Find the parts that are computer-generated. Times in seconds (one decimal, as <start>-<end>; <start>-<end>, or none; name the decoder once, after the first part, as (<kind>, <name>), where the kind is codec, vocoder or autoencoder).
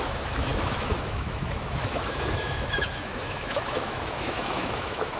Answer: 0.0-5.2 (autoencoder, DAC-VAE)